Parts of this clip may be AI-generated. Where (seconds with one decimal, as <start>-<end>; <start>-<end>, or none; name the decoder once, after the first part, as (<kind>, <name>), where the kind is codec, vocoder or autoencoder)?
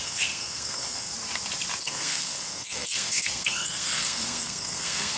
0.0-1.1 (codec, SNAC); 1.8-5.2